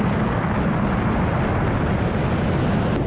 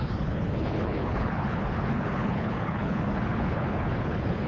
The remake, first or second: second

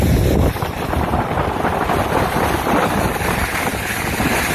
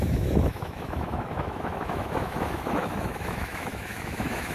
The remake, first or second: second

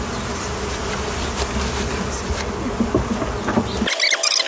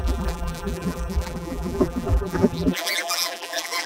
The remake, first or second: second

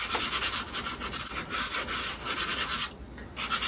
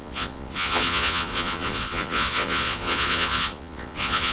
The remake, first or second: second